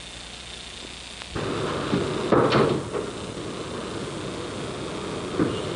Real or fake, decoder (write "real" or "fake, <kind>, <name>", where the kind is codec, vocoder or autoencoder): real